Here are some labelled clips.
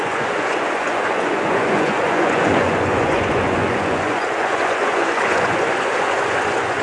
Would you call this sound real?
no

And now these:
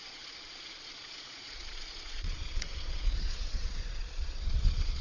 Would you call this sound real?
no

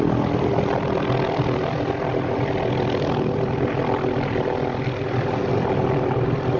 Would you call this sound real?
yes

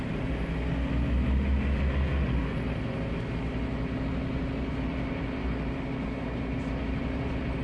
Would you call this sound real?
yes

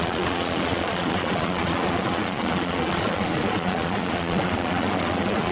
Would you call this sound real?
no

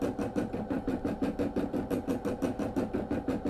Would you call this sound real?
yes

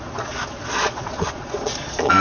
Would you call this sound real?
no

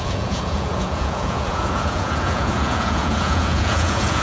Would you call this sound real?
no